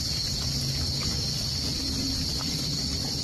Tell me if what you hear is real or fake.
real